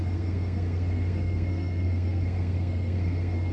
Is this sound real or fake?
fake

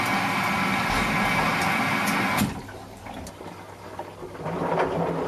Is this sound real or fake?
real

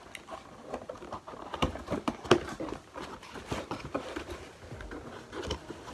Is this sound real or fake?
real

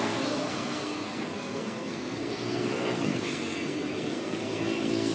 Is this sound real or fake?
fake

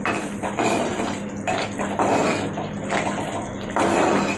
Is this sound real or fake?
real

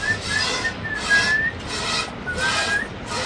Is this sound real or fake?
real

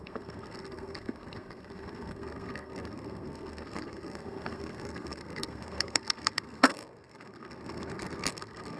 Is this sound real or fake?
fake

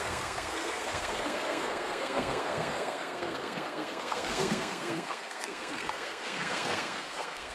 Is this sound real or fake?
fake